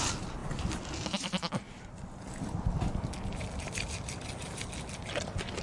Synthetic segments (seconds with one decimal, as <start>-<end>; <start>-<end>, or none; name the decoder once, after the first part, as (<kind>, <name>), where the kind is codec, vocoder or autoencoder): none